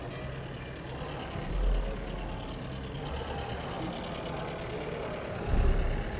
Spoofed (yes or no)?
no